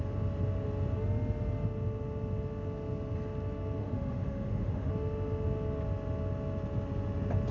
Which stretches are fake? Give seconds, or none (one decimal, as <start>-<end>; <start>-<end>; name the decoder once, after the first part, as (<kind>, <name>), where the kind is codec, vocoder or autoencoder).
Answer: 3.8-4.9 (autoencoder, DAC-VAE)